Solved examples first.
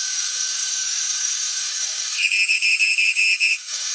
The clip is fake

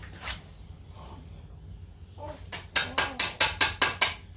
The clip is real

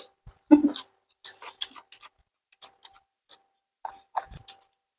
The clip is real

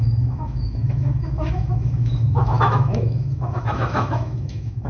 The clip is fake